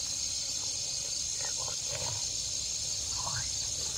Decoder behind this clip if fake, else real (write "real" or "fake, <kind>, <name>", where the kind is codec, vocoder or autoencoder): real